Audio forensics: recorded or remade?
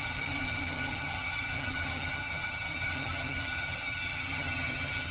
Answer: remade